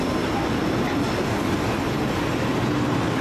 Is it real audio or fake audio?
real